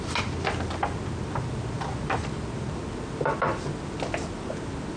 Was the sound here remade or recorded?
recorded